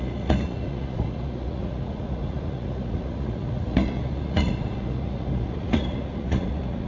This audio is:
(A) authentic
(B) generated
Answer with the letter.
B